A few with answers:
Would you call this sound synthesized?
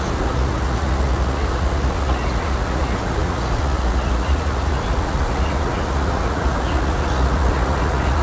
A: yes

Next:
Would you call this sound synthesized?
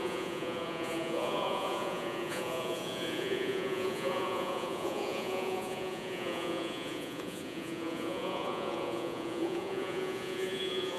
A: yes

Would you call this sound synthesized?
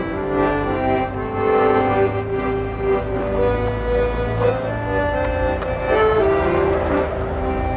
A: no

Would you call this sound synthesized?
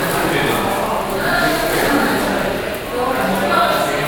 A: no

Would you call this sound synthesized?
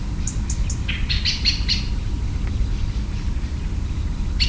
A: no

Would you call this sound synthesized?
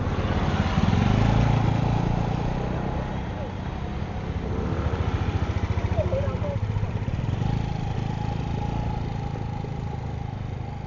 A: no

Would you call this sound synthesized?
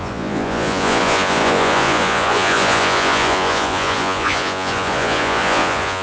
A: yes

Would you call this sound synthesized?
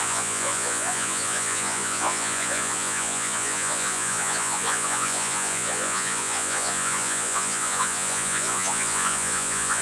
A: yes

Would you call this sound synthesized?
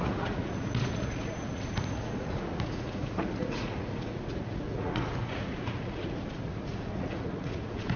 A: yes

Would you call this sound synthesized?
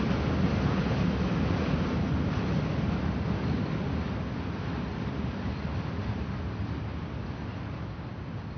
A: no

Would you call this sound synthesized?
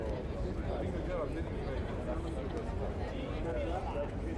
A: no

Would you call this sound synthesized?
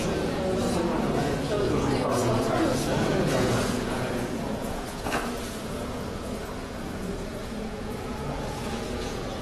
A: yes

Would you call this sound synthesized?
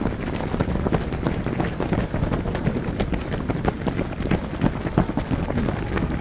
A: no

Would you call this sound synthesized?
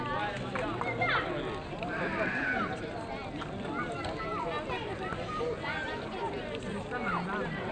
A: no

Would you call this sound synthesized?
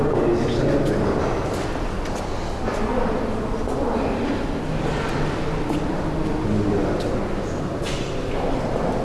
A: no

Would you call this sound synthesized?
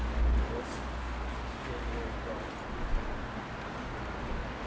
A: no